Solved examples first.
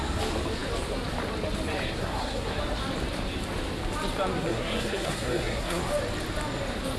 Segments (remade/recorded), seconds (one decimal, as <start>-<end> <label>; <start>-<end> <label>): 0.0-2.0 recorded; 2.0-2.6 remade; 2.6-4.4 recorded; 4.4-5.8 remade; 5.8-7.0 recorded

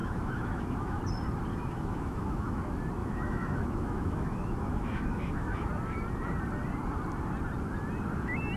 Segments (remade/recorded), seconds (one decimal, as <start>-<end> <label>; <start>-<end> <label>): 0.0-1.0 remade; 1.0-1.5 recorded; 1.5-2.6 remade; 2.6-3.0 recorded; 3.0-5.7 remade; 5.7-8.6 recorded

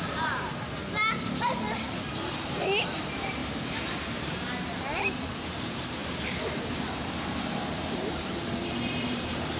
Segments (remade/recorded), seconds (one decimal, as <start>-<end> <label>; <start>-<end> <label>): 0.0-0.8 remade; 0.8-2.8 recorded; 2.8-9.6 remade

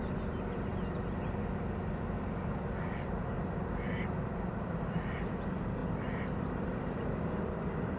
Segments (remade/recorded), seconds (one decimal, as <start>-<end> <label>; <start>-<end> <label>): 0.0-0.7 remade; 0.7-4.8 recorded; 4.8-5.8 remade; 5.8-6.8 recorded; 6.8-8.0 remade